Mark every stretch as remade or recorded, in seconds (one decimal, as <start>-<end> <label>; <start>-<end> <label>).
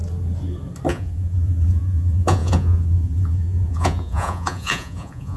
0.0-0.9 recorded; 0.9-5.4 remade